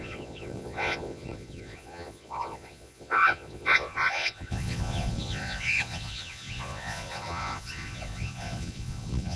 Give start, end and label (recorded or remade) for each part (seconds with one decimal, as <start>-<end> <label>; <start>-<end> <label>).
0.0-9.4 remade